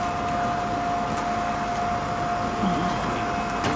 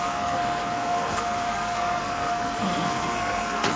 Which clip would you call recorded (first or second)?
first